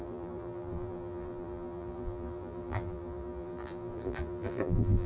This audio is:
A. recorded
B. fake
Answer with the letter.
B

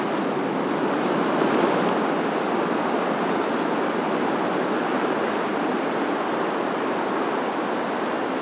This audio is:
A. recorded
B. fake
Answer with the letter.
A